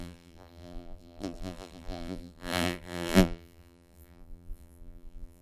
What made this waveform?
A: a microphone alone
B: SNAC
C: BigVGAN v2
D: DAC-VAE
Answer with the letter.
C